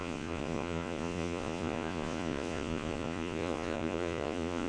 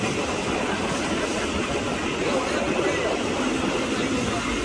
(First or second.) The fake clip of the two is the first